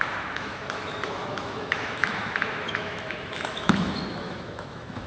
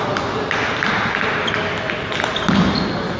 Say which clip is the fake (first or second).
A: first